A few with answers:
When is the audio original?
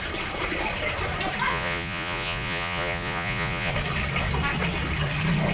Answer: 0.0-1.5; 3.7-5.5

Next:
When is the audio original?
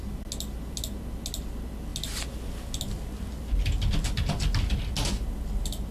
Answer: 0.0-5.9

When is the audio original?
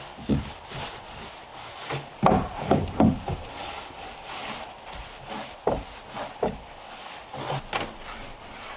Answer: 0.0-8.8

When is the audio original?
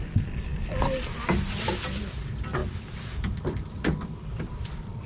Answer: 0.0-5.1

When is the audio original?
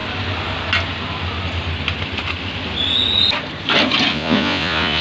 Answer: 0.0-4.1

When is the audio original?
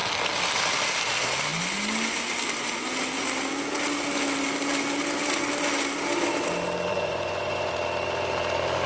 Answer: 0.0-6.9; 7.7-8.9